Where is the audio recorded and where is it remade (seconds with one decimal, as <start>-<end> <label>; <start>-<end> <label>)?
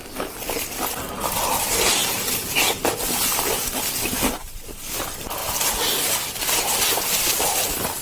0.0-2.0 recorded; 2.0-3.9 remade; 3.9-4.4 recorded; 4.4-5.0 remade; 5.0-5.4 recorded; 5.4-6.1 remade; 6.1-8.0 recorded